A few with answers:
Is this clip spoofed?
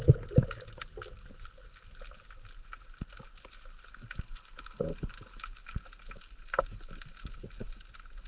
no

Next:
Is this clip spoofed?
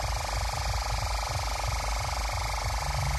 no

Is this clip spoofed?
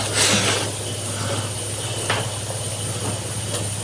no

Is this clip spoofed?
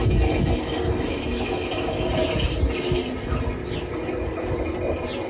no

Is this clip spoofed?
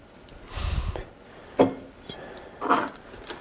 no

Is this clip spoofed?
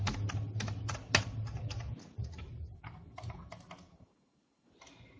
no